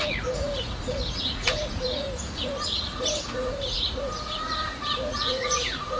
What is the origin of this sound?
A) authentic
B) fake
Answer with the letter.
B